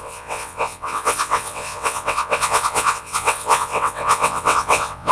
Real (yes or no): no